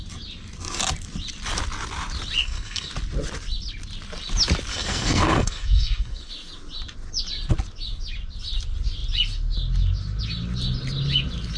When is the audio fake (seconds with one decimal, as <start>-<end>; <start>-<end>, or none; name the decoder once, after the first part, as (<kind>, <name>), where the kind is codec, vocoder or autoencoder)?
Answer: 2.4-2.9 (codec, SNAC); 4.7-6.3